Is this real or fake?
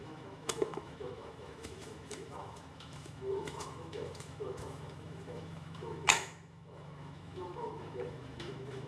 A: fake